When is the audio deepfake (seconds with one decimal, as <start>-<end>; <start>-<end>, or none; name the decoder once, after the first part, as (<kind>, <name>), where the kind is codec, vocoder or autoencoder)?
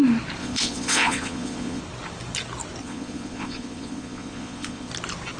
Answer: 0.4-1.8 (vocoder, Vocos); 2.8-4.9